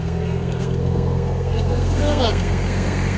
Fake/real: fake